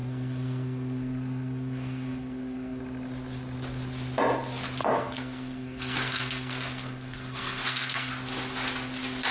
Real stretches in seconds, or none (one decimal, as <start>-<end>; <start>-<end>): 2.8-4.8; 8.1-9.3